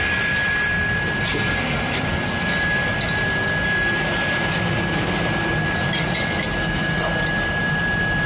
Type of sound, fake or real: real